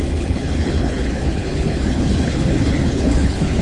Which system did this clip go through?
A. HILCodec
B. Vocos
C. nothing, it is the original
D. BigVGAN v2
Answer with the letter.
A